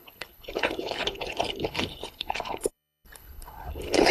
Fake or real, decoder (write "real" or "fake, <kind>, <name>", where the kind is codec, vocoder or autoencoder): fake, codec, HILCodec